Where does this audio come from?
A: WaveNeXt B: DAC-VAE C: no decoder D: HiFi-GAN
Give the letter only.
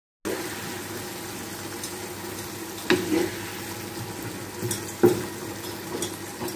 C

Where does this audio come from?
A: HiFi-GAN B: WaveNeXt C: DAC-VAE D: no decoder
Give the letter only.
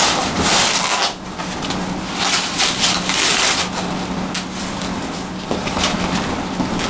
D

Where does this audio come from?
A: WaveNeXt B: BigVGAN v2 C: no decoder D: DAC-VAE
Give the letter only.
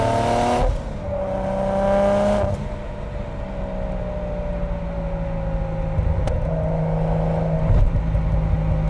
C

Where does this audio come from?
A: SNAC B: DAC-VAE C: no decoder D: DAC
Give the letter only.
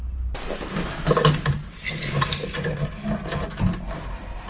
C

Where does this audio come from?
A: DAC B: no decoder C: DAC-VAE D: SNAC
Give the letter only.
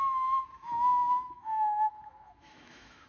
C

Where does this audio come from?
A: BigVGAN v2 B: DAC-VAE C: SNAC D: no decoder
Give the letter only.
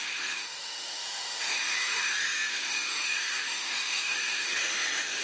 B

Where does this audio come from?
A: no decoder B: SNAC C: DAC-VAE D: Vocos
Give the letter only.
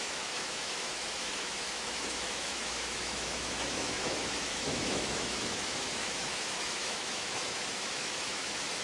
C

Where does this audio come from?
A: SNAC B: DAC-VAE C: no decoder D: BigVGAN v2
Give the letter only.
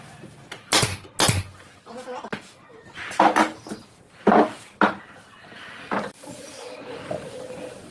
C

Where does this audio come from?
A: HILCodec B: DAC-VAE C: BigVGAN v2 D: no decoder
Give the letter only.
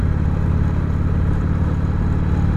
D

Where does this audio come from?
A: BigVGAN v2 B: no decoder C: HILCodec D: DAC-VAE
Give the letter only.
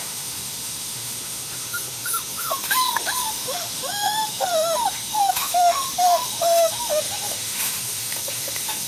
D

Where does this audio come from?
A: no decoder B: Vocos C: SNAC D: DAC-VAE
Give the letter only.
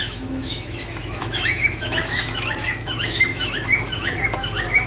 D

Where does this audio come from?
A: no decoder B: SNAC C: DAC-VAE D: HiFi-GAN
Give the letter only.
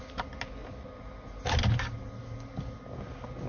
A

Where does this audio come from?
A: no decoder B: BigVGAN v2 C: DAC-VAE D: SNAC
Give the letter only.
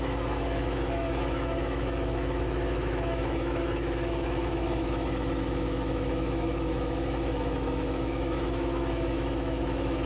C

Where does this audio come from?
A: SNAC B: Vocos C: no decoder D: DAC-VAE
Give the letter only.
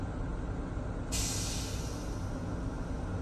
C